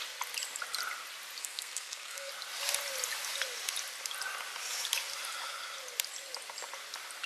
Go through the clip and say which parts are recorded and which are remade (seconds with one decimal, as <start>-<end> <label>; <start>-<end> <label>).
0.0-1.4 recorded; 1.4-2.3 remade; 2.3-7.3 recorded